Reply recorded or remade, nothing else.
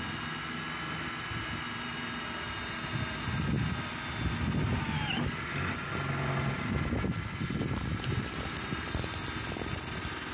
recorded